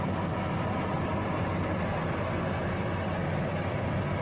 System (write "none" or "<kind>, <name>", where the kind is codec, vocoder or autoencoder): none